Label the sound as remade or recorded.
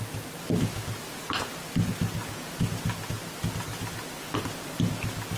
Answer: recorded